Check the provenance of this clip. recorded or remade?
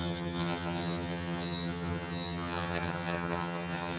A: remade